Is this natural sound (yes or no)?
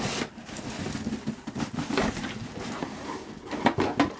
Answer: yes